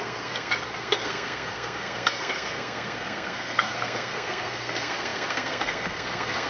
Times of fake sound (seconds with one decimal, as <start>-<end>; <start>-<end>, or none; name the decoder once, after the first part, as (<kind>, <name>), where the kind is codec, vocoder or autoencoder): 0.0-6.5 (codec, SNAC)